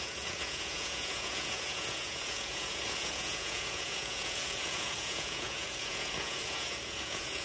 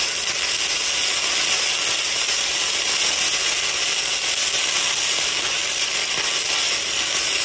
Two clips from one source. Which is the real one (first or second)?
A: second